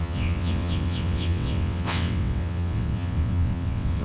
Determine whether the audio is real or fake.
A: fake